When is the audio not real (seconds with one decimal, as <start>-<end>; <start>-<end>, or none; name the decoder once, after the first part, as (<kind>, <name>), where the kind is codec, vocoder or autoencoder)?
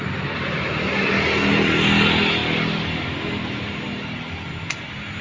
none